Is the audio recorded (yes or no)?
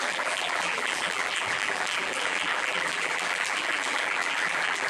no